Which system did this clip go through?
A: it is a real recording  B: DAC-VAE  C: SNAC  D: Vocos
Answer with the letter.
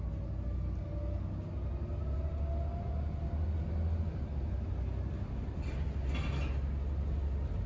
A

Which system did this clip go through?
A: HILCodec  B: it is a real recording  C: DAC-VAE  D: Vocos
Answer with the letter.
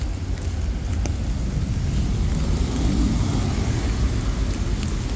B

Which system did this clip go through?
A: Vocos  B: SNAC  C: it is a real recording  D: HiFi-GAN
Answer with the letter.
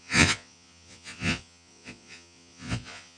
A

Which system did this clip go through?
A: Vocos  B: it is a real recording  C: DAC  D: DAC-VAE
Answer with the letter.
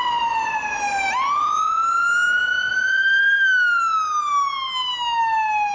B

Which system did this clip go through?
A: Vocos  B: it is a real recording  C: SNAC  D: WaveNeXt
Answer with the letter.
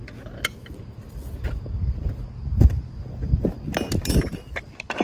B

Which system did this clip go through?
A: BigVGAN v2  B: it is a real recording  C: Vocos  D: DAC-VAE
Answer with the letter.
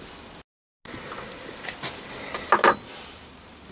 B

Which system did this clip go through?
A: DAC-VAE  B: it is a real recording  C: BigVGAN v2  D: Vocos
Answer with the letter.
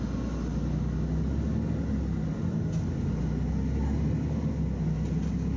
B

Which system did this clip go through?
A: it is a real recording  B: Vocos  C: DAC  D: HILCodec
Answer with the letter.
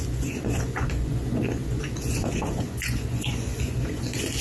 B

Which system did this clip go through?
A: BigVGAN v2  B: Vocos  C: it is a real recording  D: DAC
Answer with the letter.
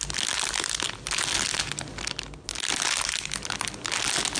C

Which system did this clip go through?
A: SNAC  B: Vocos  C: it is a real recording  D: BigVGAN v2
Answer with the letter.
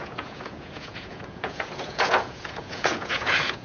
B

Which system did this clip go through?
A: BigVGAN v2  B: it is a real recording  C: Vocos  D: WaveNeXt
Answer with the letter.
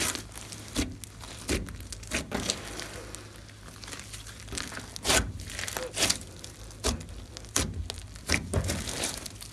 B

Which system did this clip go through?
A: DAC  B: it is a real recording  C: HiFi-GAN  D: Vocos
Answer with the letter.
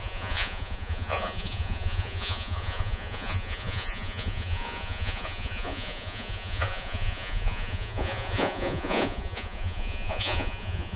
D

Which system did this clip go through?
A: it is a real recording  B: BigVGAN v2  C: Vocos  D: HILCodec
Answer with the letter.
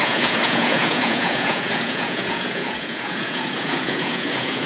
C